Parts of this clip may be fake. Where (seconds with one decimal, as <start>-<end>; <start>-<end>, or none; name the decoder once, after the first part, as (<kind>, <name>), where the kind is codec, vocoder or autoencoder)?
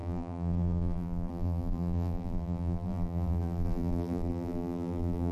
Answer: 0.0-5.3 (vocoder, BigVGAN v2)